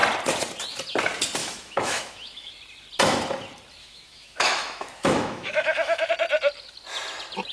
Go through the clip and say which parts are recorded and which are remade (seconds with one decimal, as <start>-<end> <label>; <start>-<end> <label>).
0.0-1.4 recorded; 1.4-2.5 remade; 2.5-3.8 recorded; 3.8-6.1 remade; 6.1-7.5 recorded